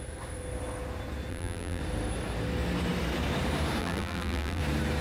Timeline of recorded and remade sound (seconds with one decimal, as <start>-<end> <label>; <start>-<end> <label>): 0.0-1.3 recorded; 1.3-1.8 remade; 1.8-3.8 recorded; 3.8-4.6 remade; 4.6-5.0 recorded